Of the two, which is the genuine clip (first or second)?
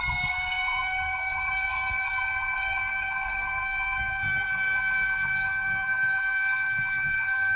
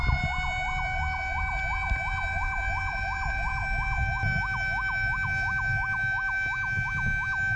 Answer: second